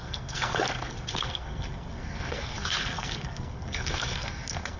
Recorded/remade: remade